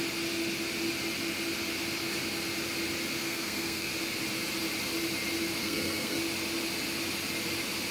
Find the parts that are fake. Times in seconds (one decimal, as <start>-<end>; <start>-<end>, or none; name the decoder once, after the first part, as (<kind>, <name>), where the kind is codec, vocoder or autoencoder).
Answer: 3.2-3.9 (codec, SNAC); 5.6-6.2